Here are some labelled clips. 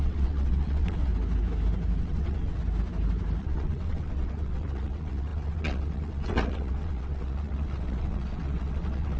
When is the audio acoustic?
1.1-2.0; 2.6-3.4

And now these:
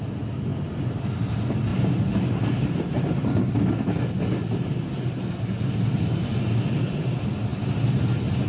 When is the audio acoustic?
0.0-8.5

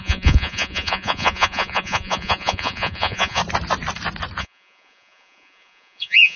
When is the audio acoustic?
3.4-4.4

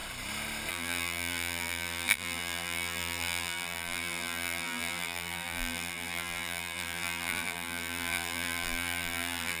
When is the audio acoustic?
0.0-0.7

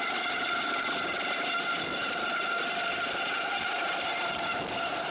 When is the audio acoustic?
0.0-5.1

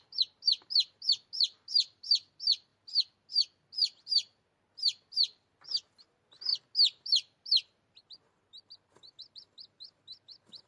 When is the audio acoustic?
0.0-10.7

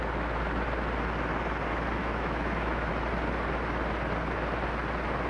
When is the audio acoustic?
0.0-2.0; 2.9-5.3

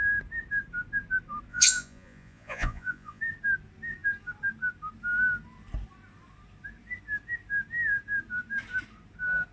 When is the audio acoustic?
0.0-1.5; 3.2-9.5